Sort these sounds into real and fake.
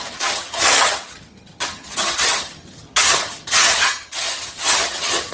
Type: fake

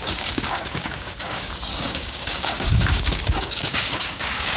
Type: fake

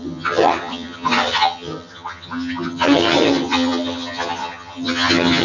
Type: fake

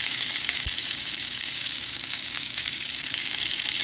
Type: fake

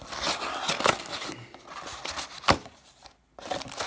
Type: real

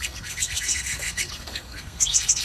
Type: fake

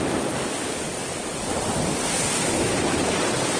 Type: real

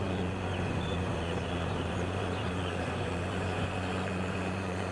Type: fake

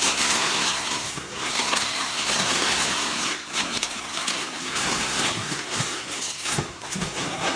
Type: fake